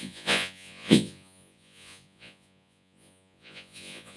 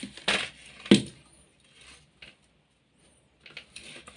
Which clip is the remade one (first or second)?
first